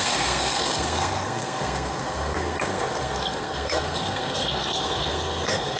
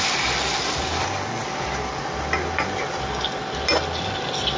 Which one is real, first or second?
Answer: second